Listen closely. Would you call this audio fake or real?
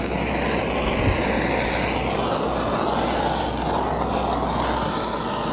real